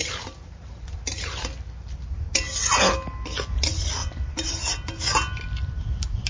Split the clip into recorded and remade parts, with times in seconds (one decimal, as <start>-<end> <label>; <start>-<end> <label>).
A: 0.0-1.4 remade; 1.4-4.0 recorded; 4.0-5.0 remade; 5.0-6.3 recorded